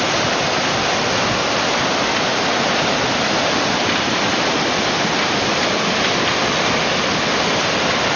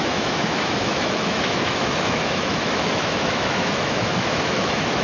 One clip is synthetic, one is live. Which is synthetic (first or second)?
second